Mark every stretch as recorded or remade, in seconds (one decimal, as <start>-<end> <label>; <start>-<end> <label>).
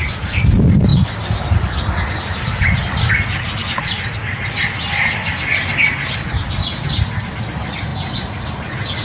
0.0-9.0 recorded